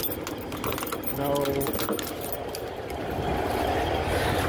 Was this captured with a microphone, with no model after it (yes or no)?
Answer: yes